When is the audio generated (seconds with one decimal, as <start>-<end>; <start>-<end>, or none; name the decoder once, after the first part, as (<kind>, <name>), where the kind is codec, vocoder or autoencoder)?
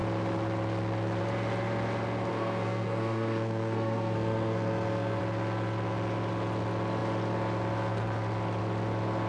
2.3-5.2 (codec, SNAC)